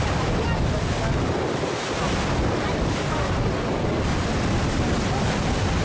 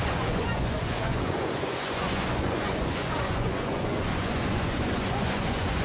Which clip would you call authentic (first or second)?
first